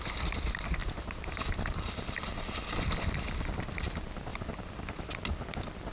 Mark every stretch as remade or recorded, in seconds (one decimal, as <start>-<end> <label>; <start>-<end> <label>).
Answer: 0.0-0.8 recorded; 0.8-3.7 remade; 3.7-4.3 recorded; 4.3-5.5 remade; 5.5-5.9 recorded